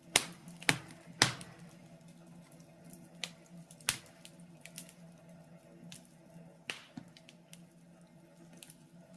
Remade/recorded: recorded